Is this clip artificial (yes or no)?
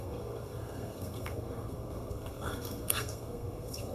yes